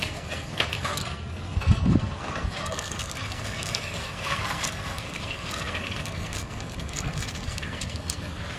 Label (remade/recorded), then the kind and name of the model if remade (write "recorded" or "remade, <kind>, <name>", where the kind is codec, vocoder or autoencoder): remade, codec, SNAC